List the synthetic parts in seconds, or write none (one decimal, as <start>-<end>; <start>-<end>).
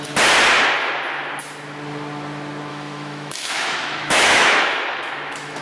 2.7-5.6